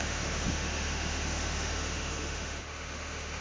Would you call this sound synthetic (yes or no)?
yes